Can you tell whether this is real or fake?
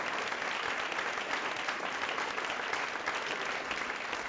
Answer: real